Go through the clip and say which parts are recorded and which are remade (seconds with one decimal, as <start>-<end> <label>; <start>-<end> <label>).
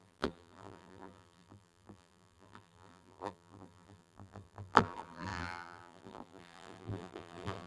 0.0-7.7 remade